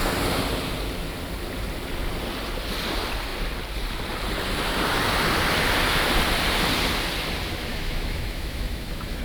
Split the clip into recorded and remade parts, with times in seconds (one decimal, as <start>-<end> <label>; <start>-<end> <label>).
0.0-7.7 recorded; 7.7-9.2 remade